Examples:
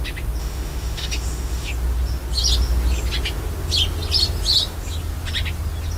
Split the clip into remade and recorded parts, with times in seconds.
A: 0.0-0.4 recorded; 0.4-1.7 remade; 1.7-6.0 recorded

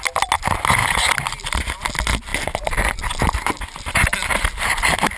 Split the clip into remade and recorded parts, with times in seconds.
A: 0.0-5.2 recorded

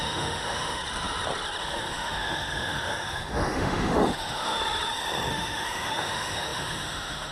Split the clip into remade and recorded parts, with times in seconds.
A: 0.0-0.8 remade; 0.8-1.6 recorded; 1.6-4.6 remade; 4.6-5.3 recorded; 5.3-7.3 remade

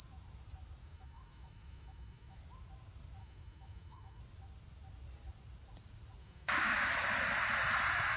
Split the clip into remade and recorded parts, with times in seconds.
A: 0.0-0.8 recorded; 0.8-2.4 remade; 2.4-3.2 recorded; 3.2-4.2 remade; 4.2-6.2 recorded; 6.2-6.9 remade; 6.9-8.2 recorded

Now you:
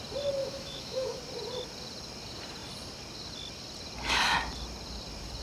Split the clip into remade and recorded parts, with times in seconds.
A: 0.0-0.4 recorded; 0.4-1.2 remade; 1.2-5.4 recorded